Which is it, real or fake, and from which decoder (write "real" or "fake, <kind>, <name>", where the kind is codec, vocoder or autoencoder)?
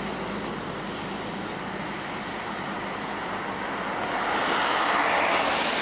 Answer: real